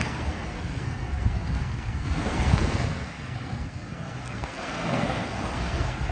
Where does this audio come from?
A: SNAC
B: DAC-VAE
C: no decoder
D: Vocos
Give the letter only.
A